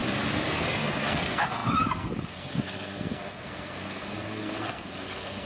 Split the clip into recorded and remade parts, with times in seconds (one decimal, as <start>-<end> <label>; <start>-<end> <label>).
0.0-0.5 recorded; 0.5-5.5 remade